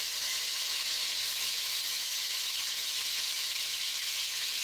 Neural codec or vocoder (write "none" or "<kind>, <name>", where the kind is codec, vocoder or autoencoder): autoencoder, DAC-VAE